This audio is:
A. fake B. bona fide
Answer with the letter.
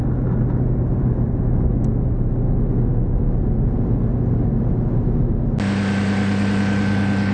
B